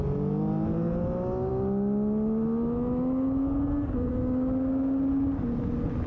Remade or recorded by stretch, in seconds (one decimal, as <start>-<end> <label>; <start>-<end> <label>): 0.0-6.1 recorded